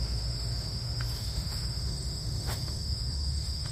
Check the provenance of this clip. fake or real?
fake